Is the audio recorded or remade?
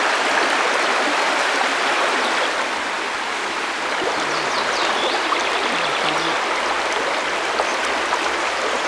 recorded